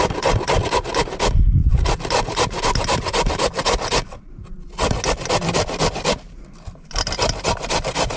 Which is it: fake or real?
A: real